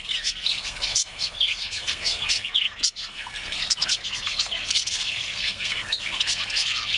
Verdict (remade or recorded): remade